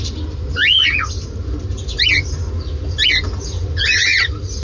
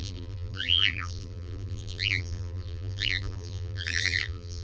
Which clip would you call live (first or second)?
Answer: first